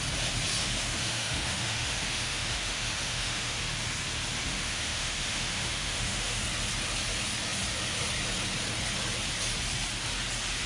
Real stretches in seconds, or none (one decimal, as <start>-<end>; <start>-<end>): 0.0-0.6; 3.6-4.5; 6.4-10.7